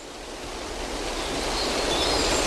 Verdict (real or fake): real